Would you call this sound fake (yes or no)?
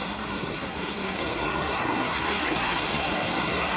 yes